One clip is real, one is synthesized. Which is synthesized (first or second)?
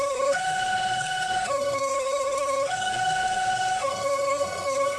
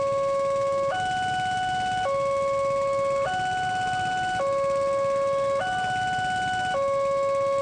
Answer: first